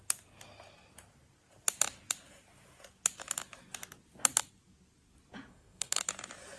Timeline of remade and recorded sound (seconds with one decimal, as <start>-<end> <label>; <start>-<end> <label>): 0.0-5.5 recorded; 5.5-6.0 remade; 6.0-6.6 recorded